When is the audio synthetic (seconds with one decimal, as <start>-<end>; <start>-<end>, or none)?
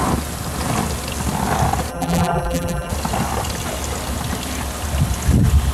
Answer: 1.9-2.9